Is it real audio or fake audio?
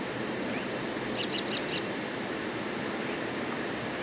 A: real